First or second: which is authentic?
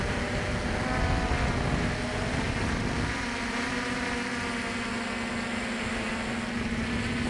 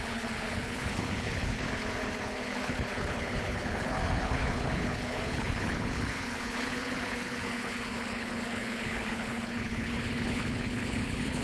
first